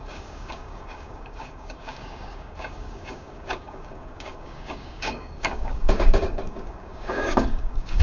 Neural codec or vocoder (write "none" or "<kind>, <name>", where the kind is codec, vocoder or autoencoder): codec, DAC